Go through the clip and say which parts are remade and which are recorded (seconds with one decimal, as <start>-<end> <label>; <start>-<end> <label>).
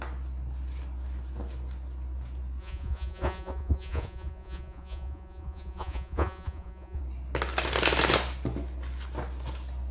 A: 0.0-2.6 recorded; 2.6-7.0 remade; 7.0-9.9 recorded